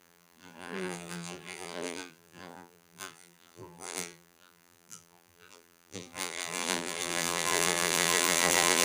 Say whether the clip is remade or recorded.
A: remade